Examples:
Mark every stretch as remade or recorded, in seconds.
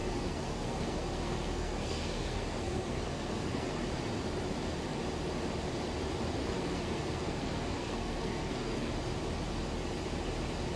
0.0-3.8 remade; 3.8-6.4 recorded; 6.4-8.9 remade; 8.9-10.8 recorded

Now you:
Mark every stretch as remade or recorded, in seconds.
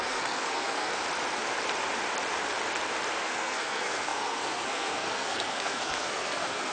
0.0-0.9 remade; 0.9-3.1 recorded; 3.1-6.7 remade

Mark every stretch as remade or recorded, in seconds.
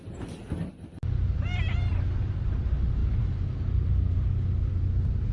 0.0-5.3 recorded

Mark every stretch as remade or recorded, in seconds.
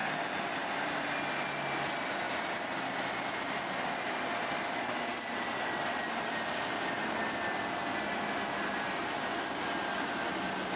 0.0-10.8 recorded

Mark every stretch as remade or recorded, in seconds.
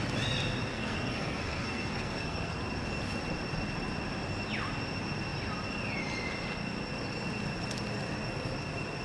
0.0-0.7 recorded; 0.7-2.6 remade; 2.6-9.0 recorded